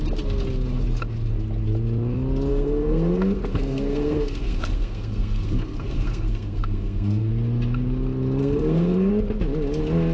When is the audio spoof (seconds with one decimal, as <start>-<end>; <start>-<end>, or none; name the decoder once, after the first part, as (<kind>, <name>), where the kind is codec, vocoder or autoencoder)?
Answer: 2.5-7.3 (codec, SNAC); 8.4-9.1